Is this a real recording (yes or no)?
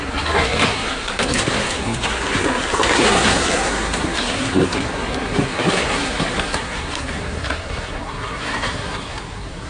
no